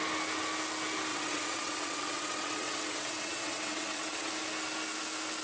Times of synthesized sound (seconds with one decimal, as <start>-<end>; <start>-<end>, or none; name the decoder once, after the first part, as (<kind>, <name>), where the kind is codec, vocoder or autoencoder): 1.1-4.3 (vocoder, WaveNeXt)